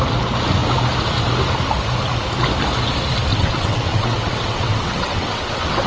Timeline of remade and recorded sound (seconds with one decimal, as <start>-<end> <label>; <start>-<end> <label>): 0.0-3.3 recorded; 3.3-5.9 remade